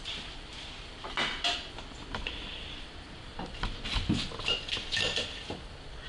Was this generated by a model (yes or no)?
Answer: yes